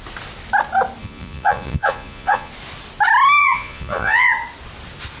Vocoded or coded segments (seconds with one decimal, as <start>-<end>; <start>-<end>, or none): 1.0-2.5; 3.4-4.3